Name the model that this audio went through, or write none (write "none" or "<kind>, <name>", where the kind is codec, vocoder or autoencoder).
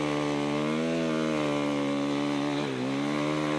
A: none